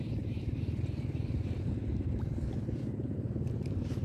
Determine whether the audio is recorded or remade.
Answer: remade